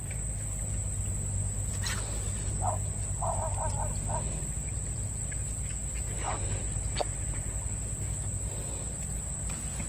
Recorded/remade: recorded